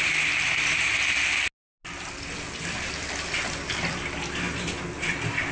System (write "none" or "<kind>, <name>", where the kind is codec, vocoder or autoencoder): none